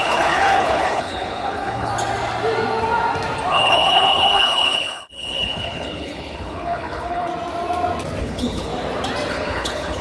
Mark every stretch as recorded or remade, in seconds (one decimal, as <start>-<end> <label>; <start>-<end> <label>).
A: 0.0-1.9 remade; 1.9-3.5 recorded; 3.5-7.3 remade; 7.3-8.2 recorded; 8.2-8.7 remade; 8.7-9.3 recorded; 9.3-10.0 remade